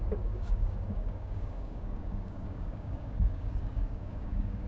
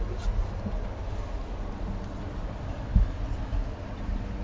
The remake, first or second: first